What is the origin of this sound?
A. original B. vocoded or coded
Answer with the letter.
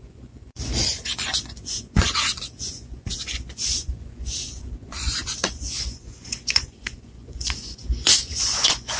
B